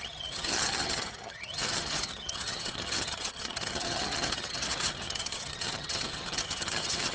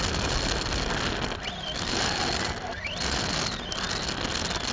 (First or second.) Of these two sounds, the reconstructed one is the first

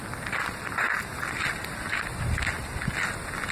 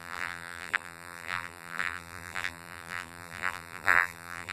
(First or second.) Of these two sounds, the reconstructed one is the second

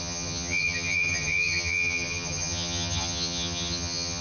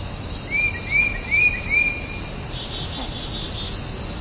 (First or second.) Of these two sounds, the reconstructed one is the first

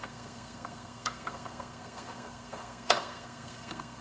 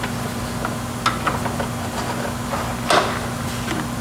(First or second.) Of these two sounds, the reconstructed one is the first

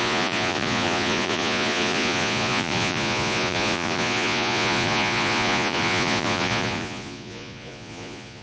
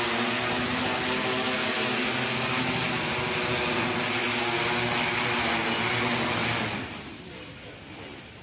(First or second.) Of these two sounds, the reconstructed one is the first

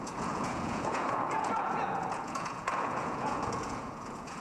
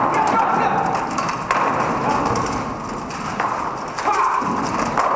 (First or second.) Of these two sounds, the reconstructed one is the first